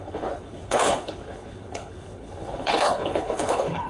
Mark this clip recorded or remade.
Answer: remade